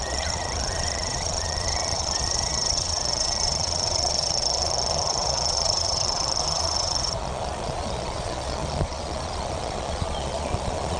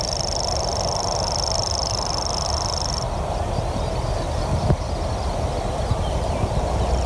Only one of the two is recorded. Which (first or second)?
second